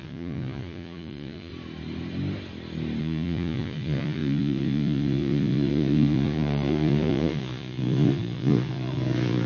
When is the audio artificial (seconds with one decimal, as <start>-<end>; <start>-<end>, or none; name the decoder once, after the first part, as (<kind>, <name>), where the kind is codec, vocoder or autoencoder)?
0.0-1.5 (vocoder, Vocos); 3.0-9.5